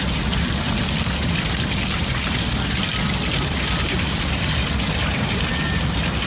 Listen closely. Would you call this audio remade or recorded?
recorded